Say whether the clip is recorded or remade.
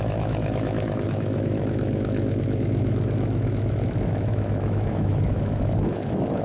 remade